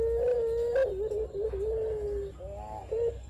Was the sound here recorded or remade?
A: recorded